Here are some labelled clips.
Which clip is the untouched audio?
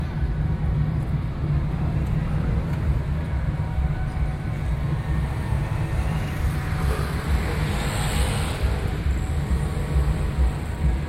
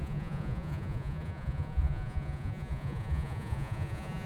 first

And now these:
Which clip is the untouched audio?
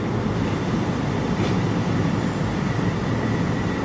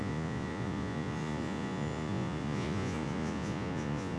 first